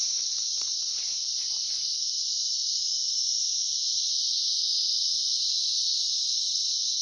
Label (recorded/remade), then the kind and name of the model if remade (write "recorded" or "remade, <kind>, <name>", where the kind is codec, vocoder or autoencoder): remade, vocoder, BigVGAN v2